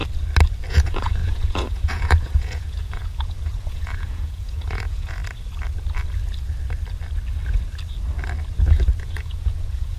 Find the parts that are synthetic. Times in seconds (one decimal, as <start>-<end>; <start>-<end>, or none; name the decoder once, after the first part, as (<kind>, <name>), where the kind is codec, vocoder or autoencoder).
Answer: 0.7-5.2 (vocoder, Vocos); 9.0-10.0